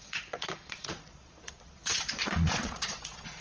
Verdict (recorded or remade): remade